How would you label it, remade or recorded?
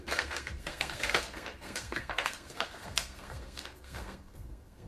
remade